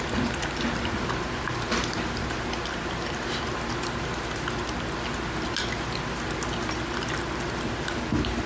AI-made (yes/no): no